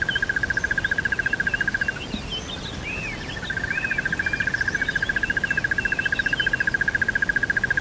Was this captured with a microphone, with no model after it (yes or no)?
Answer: yes